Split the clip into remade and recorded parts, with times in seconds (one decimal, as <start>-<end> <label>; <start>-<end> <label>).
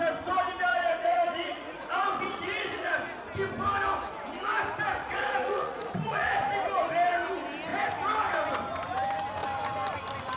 0.0-0.7 recorded; 0.7-2.9 remade; 2.9-5.0 recorded; 5.0-6.5 remade; 6.5-10.4 recorded